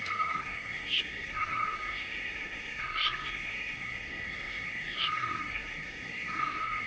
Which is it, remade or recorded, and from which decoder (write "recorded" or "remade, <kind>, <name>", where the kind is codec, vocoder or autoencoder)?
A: remade, codec, SNAC